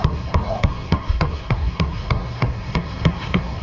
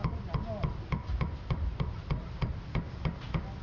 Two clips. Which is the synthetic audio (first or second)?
first